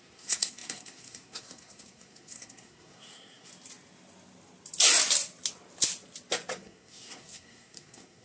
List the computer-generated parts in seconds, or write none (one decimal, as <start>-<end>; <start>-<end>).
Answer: 0.0-3.5; 6.5-8.2